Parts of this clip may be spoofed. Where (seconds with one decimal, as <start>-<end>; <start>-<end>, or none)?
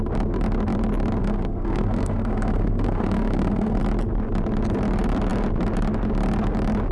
1.2-3.8